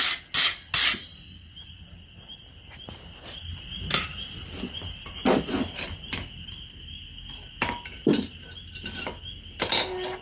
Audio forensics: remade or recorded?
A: recorded